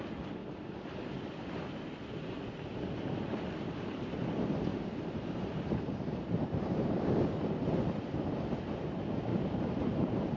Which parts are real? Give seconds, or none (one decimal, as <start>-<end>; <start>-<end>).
0.0-4.7; 8.3-9.3